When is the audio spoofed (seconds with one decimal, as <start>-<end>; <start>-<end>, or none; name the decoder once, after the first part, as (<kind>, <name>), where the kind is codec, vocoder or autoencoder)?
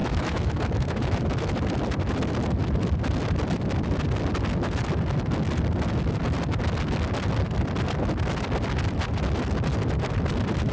0.0-1.5 (autoencoder, DAC-VAE)